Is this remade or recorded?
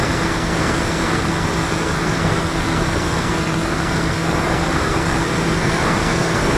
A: remade